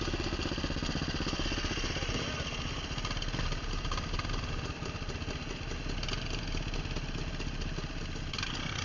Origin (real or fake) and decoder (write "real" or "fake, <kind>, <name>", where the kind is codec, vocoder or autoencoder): real